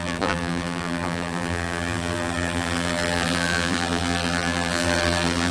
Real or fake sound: fake